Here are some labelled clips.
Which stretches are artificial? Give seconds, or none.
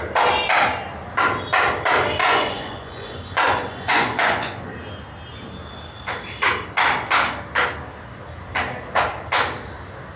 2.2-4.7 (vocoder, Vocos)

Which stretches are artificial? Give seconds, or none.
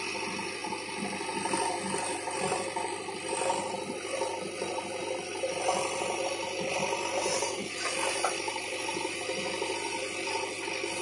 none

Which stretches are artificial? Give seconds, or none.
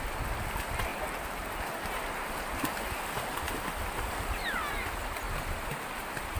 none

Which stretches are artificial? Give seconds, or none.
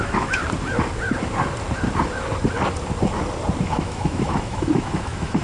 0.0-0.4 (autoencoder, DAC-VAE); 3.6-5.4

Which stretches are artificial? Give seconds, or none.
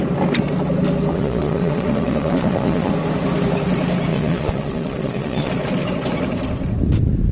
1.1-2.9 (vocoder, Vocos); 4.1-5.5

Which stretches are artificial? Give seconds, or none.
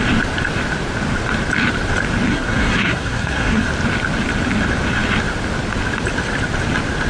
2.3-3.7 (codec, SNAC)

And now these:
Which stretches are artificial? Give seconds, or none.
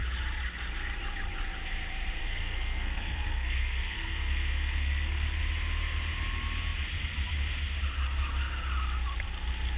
2.2-5.4 (codec, SNAC)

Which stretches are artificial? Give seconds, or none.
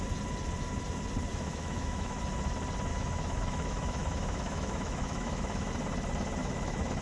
1.3-2.2 (autoencoder, DAC-VAE); 2.9-5.7; 6.4-7.0